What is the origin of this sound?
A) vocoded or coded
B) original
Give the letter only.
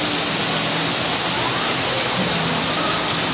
B